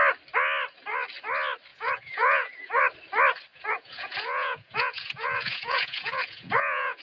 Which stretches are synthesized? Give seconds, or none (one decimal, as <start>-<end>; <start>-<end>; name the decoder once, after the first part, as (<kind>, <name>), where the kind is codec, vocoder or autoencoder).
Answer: 1.7-2.8 (vocoder, Vocos); 3.5-7.0